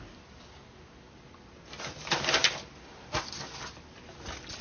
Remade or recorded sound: recorded